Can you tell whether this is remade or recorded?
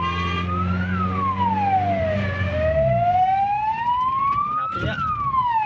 recorded